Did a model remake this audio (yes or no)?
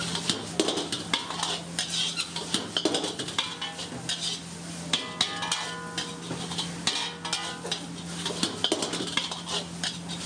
no